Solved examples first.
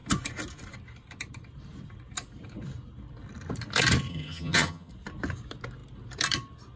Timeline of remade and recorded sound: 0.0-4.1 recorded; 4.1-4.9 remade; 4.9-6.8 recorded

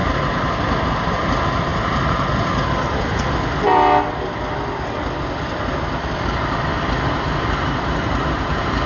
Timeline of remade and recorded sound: 0.0-1.7 remade; 1.7-6.2 recorded; 6.2-6.7 remade; 6.7-7.4 recorded; 7.4-8.9 remade

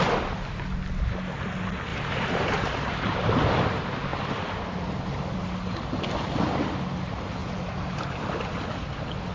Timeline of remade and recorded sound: 0.0-1.9 recorded; 1.9-3.6 remade; 3.6-7.4 recorded; 7.4-8.2 remade; 8.2-9.3 recorded

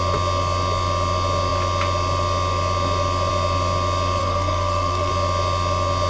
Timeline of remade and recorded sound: 0.0-4.2 recorded; 4.2-5.1 remade; 5.1-6.1 recorded

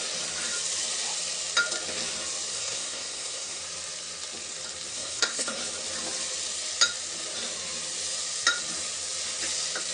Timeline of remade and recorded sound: 0.0-2.5 recorded; 2.5-3.6 remade; 3.6-4.9 recorded; 4.9-5.6 remade; 5.6-9.9 recorded

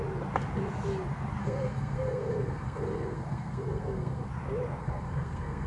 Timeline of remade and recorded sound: 0.0-1.4 recorded; 1.4-4.3 remade; 4.3-4.8 recorded; 4.8-5.7 remade

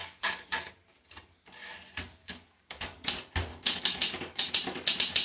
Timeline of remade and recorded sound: 0.0-0.7 remade; 0.7-2.2 recorded; 2.2-3.1 remade; 3.1-3.5 recorded; 3.5-4.5 remade; 4.5-5.2 recorded

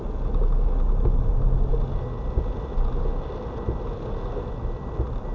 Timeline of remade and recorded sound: 0.0-5.3 recorded